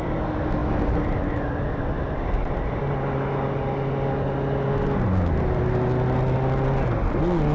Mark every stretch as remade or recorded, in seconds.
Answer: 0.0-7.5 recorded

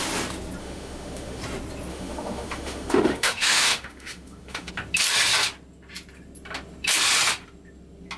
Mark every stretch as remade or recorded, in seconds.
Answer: 0.0-0.6 recorded; 0.6-1.4 remade; 1.4-1.9 recorded; 1.9-4.7 remade; 4.7-8.2 recorded

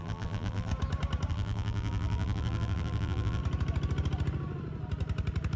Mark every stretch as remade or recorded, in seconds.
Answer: 0.0-0.7 remade; 0.7-1.3 recorded; 1.3-3.4 remade; 3.4-5.6 recorded

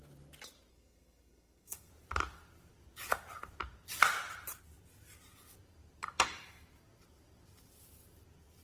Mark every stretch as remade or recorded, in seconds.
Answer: 0.0-0.7 recorded; 0.7-1.9 remade; 1.9-8.6 recorded

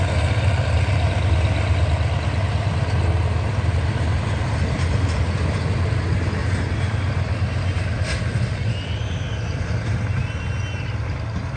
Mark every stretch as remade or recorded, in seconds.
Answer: 0.0-11.6 recorded

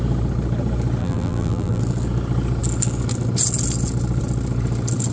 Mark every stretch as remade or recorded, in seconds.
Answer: 0.0-1.0 recorded; 1.0-1.8 remade; 1.8-5.1 recorded

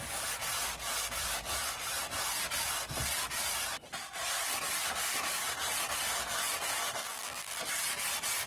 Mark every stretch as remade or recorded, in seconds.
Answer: 0.0-7.0 recorded; 7.0-7.6 remade; 7.6-8.5 recorded

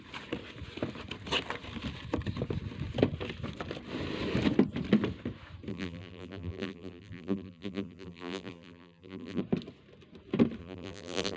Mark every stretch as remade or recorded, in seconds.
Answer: 0.0-5.7 recorded; 5.7-9.4 remade; 9.4-10.6 recorded; 10.6-11.4 remade